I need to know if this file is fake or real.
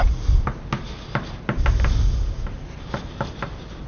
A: real